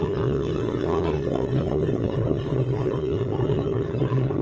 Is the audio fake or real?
fake